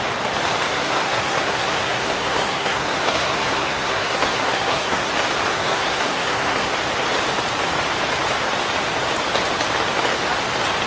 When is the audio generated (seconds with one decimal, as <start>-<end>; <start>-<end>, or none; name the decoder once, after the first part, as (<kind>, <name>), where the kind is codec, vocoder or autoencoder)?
0.7-5.1 (codec, SNAC); 5.5-6.7